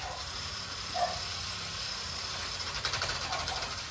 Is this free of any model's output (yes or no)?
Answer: yes